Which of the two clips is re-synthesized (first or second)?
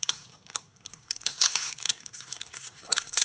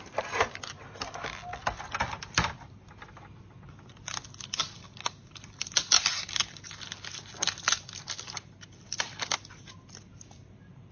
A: first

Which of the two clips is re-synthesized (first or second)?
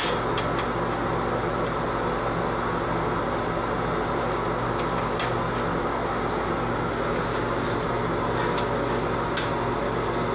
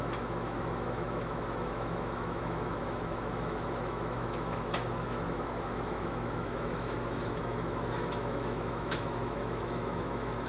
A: second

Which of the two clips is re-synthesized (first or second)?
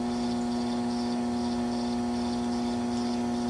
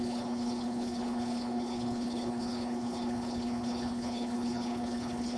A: second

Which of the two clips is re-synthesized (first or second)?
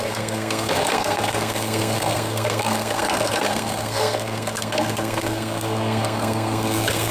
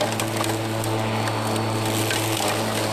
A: first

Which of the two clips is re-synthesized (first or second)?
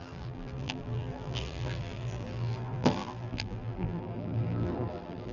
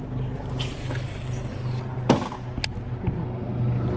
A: first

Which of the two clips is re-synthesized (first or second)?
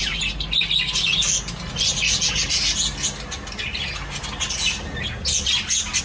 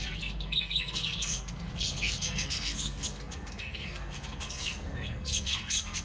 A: second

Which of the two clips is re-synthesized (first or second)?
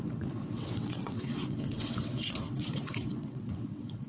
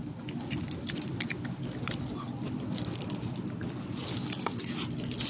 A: first